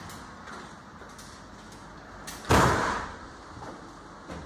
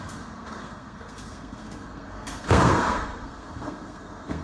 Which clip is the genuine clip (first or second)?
first